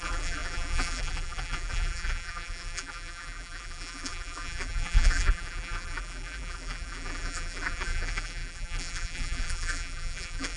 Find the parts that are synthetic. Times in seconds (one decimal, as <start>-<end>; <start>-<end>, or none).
0.0-10.6